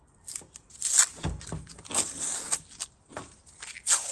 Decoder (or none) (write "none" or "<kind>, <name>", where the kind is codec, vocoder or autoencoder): none